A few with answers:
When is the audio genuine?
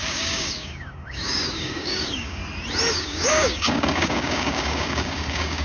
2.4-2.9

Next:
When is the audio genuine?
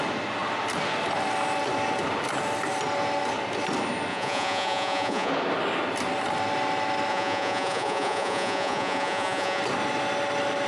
0.0-4.1; 5.3-7.1; 9.6-10.7